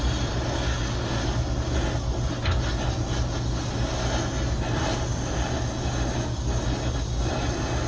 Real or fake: real